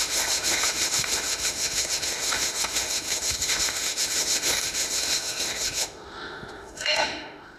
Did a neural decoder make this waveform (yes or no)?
yes